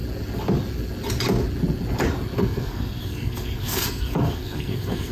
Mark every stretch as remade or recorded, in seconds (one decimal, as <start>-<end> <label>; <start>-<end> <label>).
0.0-2.4 recorded; 2.4-5.1 remade